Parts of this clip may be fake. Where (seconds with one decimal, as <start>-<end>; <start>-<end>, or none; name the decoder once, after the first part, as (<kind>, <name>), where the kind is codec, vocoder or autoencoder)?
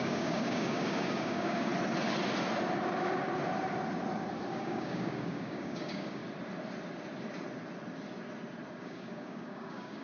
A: 0.0-1.7 (codec, DAC); 4.5-6.2; 8.7-10.0